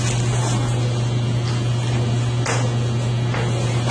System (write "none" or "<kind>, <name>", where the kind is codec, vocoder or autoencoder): none